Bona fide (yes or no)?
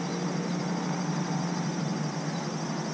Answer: yes